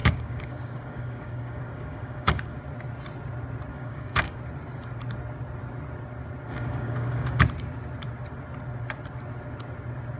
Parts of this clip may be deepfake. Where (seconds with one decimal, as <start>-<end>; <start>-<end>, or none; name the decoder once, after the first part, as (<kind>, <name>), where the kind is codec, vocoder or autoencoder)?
0.0-2.6 (codec, DAC); 3.7-4.4; 6.5-7.4